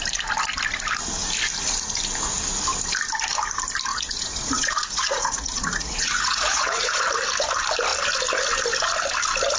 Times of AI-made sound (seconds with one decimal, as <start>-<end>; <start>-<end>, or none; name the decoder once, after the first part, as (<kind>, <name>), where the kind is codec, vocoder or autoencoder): 3.9-7.0 (vocoder, Vocos)